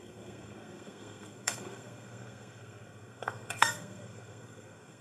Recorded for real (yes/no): no